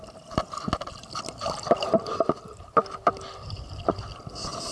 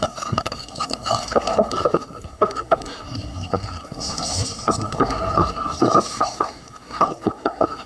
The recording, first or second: first